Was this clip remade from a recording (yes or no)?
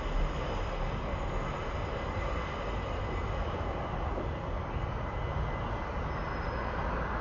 no